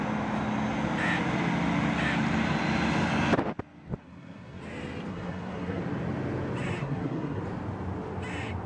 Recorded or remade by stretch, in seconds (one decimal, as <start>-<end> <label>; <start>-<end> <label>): 0.0-4.0 recorded; 4.0-4.6 remade; 4.6-5.1 recorded; 5.1-5.8 remade; 5.8-6.8 recorded; 6.8-7.4 remade; 7.4-8.7 recorded